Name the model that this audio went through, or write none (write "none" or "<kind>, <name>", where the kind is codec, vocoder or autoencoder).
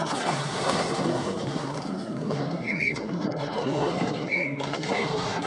codec, SNAC